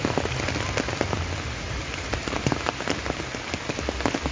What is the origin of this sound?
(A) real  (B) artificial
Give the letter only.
A